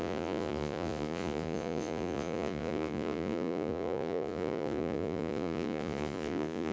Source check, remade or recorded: remade